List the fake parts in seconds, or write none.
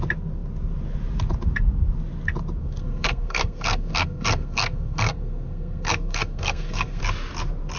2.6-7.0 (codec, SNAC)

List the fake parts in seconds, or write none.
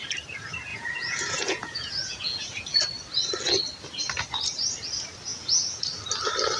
0.7-2.8 (vocoder, Vocos); 5.3-5.8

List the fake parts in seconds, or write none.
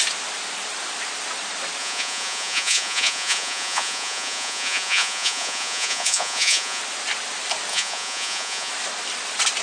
1.8-6.8 (vocoder, Vocos); 7.7-8.7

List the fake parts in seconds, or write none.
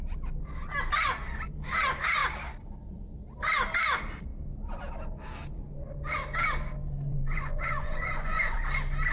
7.1-8.6 (vocoder, Vocos)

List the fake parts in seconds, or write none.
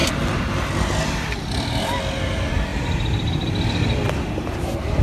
none